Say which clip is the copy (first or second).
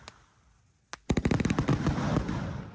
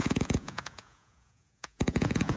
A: second